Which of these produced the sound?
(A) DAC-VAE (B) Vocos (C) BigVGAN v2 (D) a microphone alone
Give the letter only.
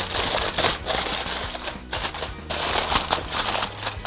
D